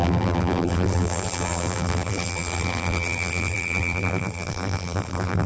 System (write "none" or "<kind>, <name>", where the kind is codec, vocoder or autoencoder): vocoder, BigVGAN v2